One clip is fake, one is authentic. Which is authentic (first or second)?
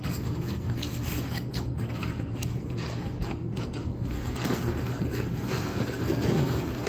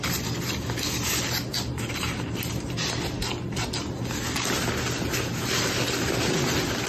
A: second